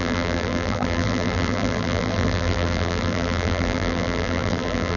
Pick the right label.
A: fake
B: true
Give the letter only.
A